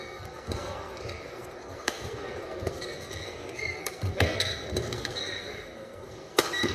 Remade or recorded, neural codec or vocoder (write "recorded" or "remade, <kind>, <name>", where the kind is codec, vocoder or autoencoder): remade, codec, SNAC